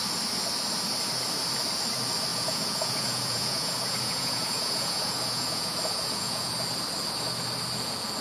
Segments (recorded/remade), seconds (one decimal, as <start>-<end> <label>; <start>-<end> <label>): 0.0-2.3 recorded; 2.3-6.5 remade; 6.5-8.2 recorded

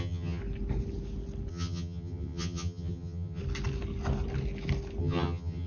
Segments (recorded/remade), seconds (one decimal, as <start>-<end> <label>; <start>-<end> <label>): 0.0-0.4 remade; 0.4-1.5 recorded; 1.5-3.4 remade; 3.4-5.0 recorded; 5.0-5.7 remade

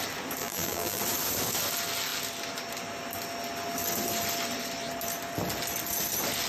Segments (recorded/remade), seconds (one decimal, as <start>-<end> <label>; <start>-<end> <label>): 0.0-0.4 recorded; 0.4-1.0 remade; 1.0-6.5 recorded

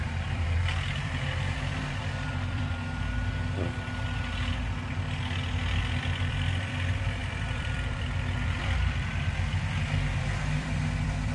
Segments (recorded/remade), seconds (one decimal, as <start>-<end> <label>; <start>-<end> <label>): 0.0-2.7 remade; 2.7-5.8 recorded; 5.8-11.3 remade